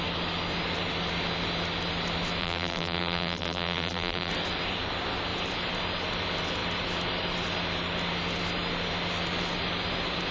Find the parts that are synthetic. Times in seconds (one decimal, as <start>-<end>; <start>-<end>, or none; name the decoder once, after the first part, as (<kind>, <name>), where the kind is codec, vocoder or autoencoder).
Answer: 2.4-4.3 (vocoder, BigVGAN v2)